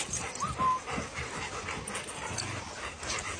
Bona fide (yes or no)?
yes